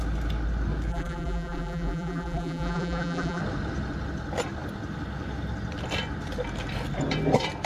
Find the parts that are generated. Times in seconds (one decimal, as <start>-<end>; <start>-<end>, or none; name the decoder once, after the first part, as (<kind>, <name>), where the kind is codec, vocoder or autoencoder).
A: 0.9-3.4 (vocoder, BigVGAN v2)